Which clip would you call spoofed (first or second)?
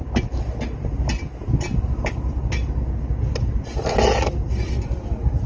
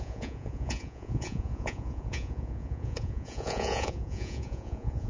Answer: second